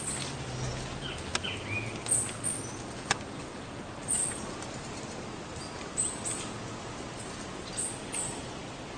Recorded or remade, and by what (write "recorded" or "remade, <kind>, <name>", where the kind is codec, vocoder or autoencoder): recorded